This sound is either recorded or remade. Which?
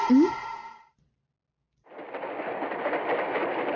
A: recorded